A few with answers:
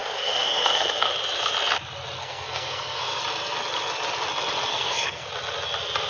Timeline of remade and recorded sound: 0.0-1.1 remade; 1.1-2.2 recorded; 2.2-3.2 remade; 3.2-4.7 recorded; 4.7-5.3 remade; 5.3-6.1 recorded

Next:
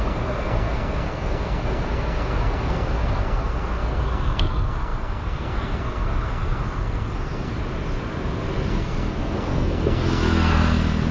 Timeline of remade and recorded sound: 0.0-7.5 remade; 7.5-8.7 recorded; 8.7-11.1 remade

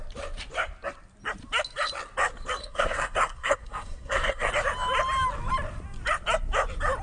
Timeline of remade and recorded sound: 0.0-2.6 recorded; 2.6-4.5 remade; 4.5-7.0 recorded

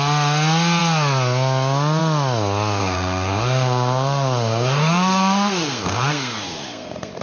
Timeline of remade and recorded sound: 0.0-2.8 recorded; 2.8-7.2 remade

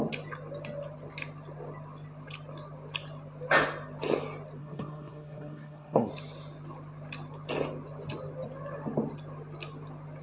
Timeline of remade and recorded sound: 0.0-4.6 recorded; 4.6-6.1 remade; 6.1-10.2 recorded

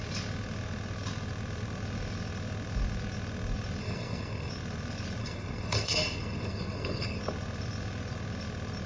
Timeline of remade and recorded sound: 0.0-3.8 recorded; 3.8-4.5 remade; 4.5-5.2 recorded; 5.2-7.2 remade; 7.2-8.9 recorded